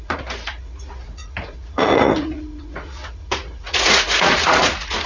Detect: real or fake fake